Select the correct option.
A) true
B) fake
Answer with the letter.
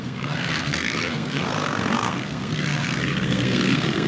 B